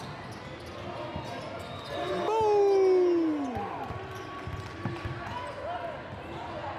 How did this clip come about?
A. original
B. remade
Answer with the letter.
A